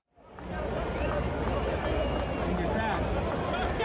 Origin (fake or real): real